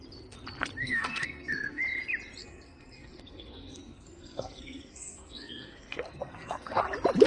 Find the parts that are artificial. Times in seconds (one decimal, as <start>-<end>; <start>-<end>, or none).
0.8-1.8; 2.4-6.8